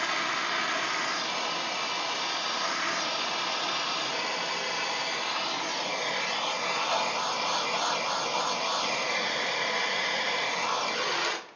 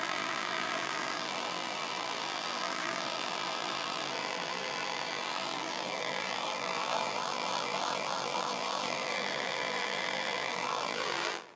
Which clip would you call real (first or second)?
first